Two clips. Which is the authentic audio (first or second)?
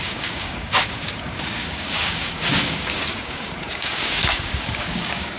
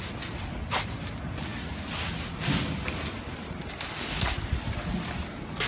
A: second